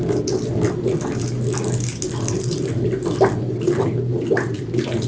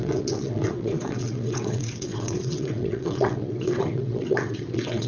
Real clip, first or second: first